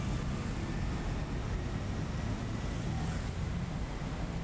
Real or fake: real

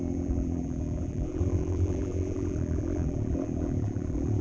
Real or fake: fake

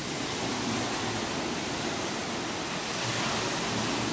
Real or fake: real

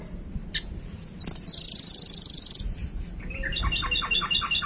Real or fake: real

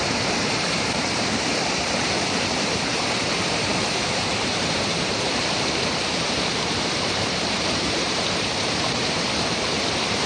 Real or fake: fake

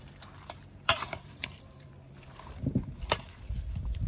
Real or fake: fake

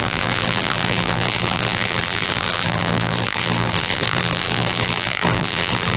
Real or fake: fake